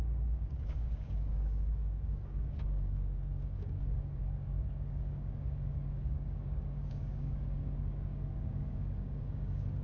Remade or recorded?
remade